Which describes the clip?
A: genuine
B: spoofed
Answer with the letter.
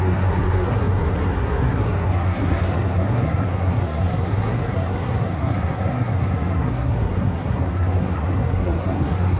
B